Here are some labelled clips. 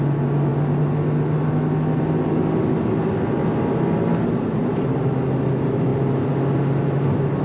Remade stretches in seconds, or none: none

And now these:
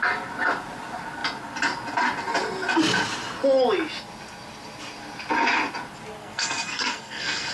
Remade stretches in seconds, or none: 6.2-7.5

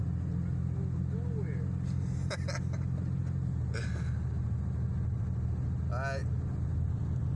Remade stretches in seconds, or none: none

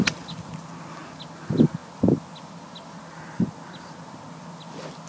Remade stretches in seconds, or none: none

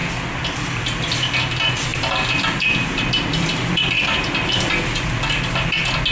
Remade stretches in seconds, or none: 1.9-5.6